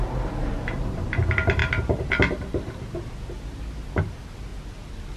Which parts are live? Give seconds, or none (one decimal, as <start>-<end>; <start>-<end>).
0.0-5.2